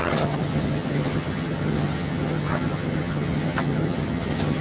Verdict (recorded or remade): remade